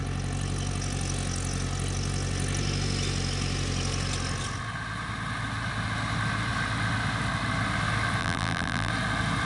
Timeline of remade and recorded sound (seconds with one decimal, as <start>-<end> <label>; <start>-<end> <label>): 0.0-8.2 recorded; 8.2-8.9 remade; 8.9-9.4 recorded